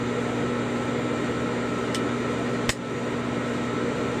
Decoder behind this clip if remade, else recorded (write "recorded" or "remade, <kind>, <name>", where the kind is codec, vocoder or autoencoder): recorded